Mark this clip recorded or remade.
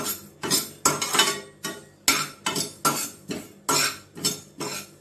recorded